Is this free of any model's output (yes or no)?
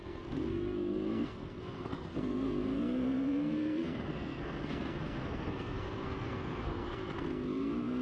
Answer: no